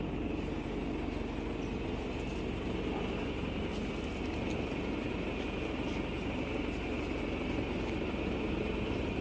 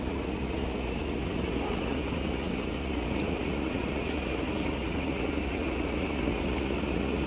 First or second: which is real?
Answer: first